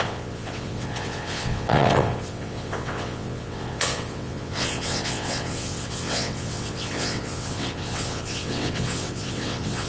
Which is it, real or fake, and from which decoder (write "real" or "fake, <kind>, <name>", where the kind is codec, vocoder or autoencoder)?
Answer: fake, vocoder, WaveNeXt